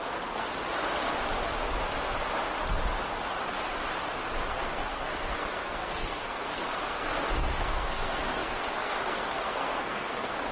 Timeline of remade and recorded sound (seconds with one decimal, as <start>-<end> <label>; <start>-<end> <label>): 0.0-0.5 remade; 0.5-4.5 recorded; 4.5-10.5 remade